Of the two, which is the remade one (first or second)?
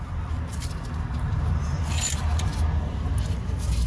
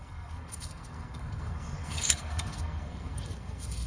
second